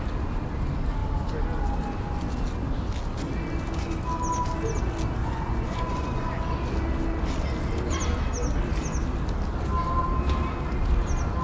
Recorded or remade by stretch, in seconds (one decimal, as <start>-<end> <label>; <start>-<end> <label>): 0.0-5.2 recorded; 5.2-6.4 remade; 6.4-11.4 recorded